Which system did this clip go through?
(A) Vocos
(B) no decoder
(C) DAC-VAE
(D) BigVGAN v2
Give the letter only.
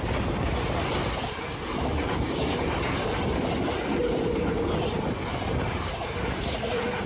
B